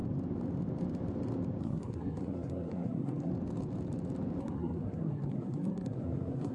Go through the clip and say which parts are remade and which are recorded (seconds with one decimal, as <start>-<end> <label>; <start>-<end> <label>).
0.0-1.6 recorded; 1.6-3.3 remade; 3.3-4.4 recorded; 4.4-6.5 remade